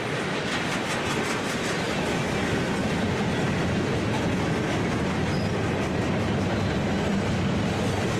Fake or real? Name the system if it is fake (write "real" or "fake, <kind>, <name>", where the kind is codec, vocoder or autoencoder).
real